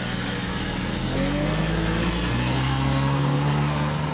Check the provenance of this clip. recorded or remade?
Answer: remade